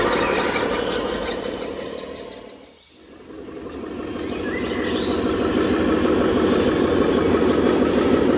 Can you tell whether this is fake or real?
real